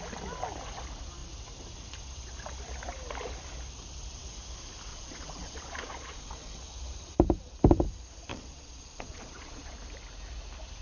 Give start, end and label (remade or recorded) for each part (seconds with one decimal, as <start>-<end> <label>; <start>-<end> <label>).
0.0-4.9 recorded; 4.9-6.6 remade; 6.6-8.3 recorded; 8.3-9.7 remade; 9.7-10.8 recorded